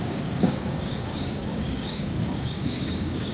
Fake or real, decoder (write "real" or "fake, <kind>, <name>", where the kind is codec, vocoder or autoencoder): fake, codec, DAC